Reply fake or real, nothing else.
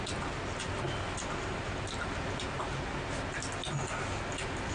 real